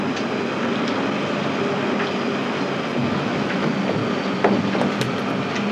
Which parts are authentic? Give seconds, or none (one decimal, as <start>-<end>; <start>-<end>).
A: 0.0-3.0; 3.7-5.7